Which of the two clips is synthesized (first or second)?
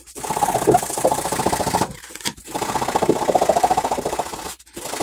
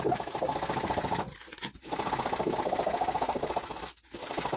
first